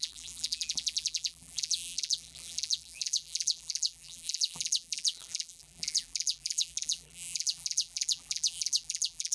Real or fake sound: fake